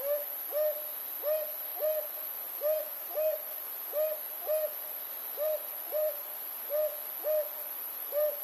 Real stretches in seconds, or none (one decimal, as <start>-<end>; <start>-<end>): 0.0-1.7; 6.7-7.6